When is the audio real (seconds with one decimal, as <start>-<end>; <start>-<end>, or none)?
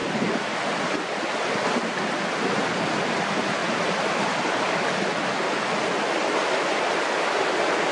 0.8-3.6; 4.4-7.9